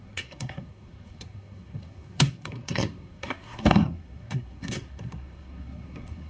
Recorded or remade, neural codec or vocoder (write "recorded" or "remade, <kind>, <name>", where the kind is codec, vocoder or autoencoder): remade, codec, SNAC